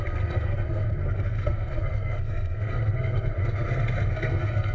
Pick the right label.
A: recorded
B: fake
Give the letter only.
B